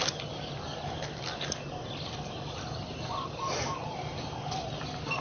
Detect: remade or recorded recorded